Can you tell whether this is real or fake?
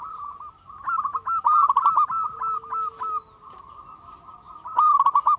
real